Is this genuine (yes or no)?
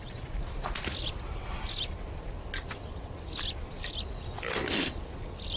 yes